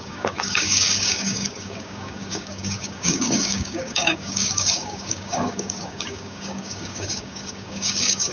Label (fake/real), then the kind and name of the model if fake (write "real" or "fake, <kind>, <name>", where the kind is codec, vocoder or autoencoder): fake, codec, DAC